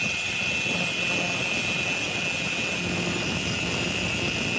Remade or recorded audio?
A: recorded